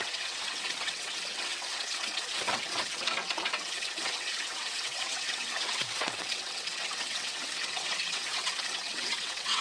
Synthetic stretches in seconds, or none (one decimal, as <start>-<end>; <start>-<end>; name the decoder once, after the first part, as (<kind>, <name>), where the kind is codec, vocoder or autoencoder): 0.0-9.6 (vocoder, WaveNeXt)